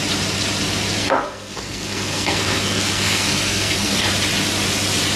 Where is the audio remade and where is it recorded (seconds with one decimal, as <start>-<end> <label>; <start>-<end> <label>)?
0.0-1.0 recorded; 1.0-4.1 remade; 4.1-5.2 recorded